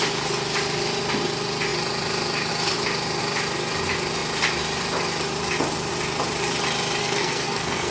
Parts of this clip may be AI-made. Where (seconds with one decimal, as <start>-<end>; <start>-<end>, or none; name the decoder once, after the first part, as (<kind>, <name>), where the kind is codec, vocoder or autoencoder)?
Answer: 7.0-7.9 (codec, SNAC)